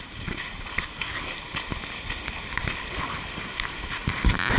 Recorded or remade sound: recorded